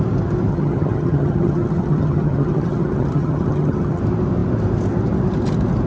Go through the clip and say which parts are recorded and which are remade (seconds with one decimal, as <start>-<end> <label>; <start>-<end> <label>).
0.0-0.5 recorded; 0.5-4.0 remade; 4.0-5.9 recorded